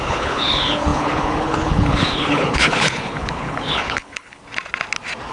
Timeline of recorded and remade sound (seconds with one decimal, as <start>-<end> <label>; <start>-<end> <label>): 0.0-4.4 remade; 4.4-5.3 recorded